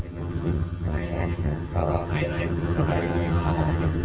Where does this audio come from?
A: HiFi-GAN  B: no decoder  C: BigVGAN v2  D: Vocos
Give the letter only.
A